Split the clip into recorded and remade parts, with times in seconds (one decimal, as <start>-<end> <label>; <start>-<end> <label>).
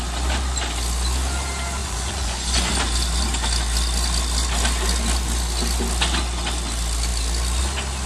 0.0-1.8 recorded; 1.8-2.7 remade; 2.7-8.1 recorded